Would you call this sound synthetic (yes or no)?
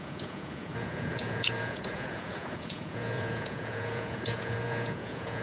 yes